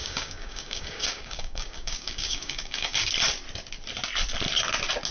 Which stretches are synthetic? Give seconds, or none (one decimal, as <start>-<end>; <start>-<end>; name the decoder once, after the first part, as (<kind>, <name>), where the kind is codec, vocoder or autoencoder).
0.0-3.1 (codec, DAC)